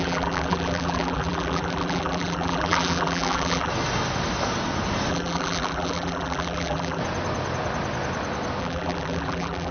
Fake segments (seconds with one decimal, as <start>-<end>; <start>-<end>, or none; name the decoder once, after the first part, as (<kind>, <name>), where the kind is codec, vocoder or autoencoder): 0.0-3.7 (vocoder, BigVGAN v2); 5.1-7.0; 8.6-9.7